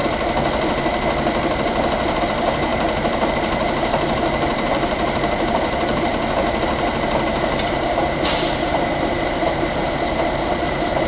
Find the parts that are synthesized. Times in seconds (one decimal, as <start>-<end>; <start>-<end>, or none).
2.2-6.1; 6.6-11.1